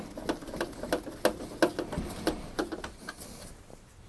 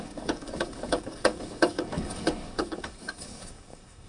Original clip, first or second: first